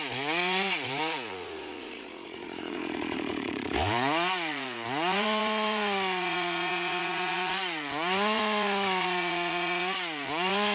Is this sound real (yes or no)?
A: no